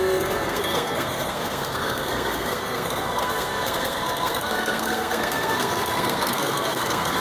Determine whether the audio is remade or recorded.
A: remade